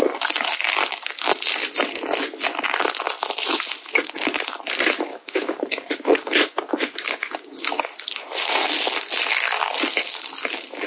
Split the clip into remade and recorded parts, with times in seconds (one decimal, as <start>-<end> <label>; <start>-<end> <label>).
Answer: 0.0-5.1 recorded; 5.1-7.8 remade; 7.8-10.9 recorded